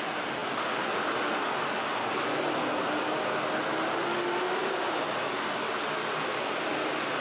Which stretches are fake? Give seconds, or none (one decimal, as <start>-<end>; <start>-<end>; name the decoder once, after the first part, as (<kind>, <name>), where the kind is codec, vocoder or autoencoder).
4.6-5.6 (codec, DAC)